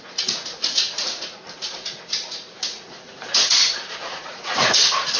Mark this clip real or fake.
fake